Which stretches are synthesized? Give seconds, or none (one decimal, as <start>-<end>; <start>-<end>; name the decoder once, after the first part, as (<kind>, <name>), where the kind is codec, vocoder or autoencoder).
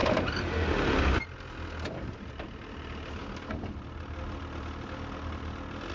none